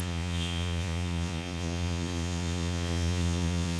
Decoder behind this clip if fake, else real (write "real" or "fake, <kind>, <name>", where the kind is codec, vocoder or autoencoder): fake, vocoder, Vocos